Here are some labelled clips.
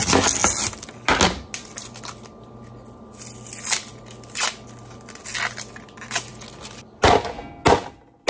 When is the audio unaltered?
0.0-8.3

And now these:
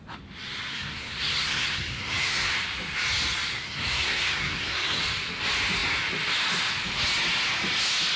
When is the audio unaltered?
0.0-0.7; 2.5-3.5; 5.0-8.2

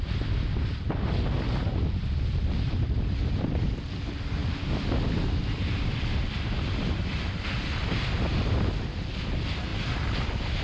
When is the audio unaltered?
0.0-10.6

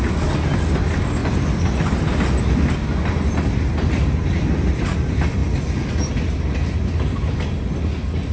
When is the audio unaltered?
0.0-8.3

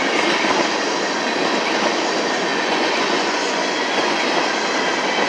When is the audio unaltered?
0.0-2.5; 4.3-5.3

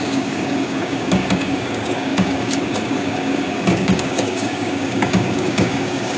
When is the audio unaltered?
none

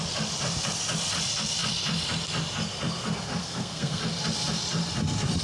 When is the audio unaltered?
0.0-3.4; 4.0-5.4

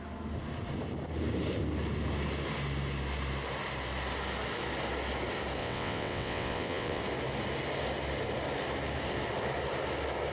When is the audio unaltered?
0.0-5.6; 7.0-10.3